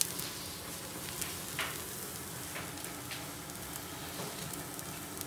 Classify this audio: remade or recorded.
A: recorded